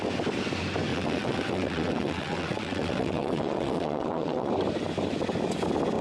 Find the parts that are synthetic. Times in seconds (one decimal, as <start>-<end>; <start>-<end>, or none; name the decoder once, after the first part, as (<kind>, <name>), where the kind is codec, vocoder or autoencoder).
0.9-4.5 (vocoder, WaveNeXt)